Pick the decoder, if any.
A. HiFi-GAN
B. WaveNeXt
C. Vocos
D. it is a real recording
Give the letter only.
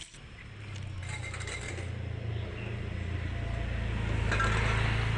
D